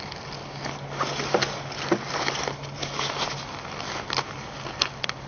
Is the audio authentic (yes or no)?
yes